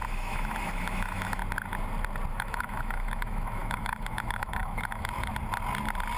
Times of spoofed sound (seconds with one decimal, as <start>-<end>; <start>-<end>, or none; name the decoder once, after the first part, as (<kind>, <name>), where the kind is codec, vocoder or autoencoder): 0.0-1.4 (autoencoder, DAC-VAE); 2.3-5.3